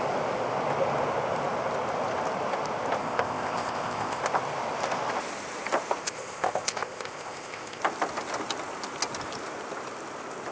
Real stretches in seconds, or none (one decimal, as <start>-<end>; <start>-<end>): 0.0-3.0; 4.2-6.0; 7.8-10.5